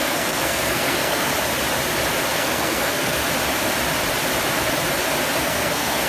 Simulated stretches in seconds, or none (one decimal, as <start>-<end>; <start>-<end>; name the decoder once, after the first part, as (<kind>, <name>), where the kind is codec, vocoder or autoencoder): 0.0-1.3 (codec, SNAC); 2.3-3.2; 5.4-6.1